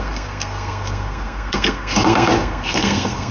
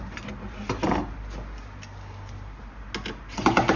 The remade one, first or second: first